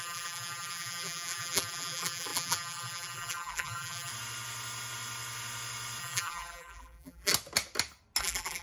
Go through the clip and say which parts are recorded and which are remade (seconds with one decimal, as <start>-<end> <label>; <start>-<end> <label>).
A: 0.0-4.1 remade; 4.1-6.0 recorded; 6.0-7.3 remade; 7.3-8.2 recorded; 8.2-8.6 remade